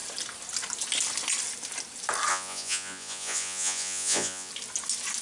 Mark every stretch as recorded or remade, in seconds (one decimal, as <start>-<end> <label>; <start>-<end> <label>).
0.0-2.3 recorded; 2.3-4.5 remade; 4.5-5.2 recorded